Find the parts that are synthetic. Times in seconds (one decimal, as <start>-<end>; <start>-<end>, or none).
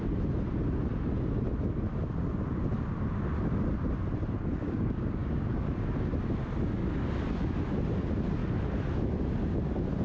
4.6-5.7